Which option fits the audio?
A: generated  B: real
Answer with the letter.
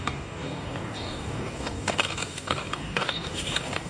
A